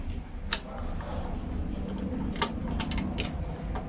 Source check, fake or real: real